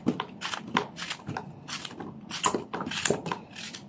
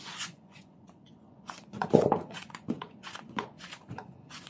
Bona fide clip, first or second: first